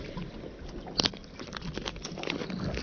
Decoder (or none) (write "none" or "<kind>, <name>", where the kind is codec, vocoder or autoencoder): none